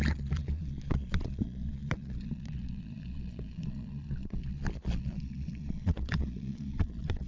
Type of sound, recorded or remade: remade